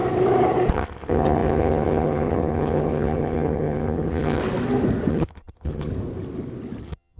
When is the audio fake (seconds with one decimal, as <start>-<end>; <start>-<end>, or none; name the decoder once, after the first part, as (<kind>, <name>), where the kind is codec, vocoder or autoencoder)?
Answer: 0.7-4.4 (vocoder, HiFi-GAN); 5.1-5.9; 6.8-7.2